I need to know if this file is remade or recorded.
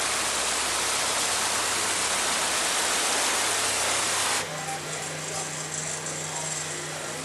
recorded